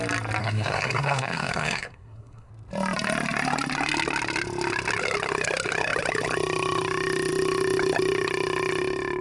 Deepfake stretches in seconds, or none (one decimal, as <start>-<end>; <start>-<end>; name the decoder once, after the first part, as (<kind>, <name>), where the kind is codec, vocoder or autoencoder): 0.4-2.5 (codec, SNAC)